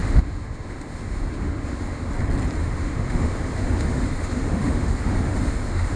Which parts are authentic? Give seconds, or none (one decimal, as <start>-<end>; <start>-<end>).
2.1-2.6